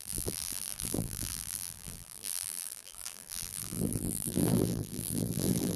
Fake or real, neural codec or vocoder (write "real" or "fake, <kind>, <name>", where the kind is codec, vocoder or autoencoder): fake, vocoder, BigVGAN v2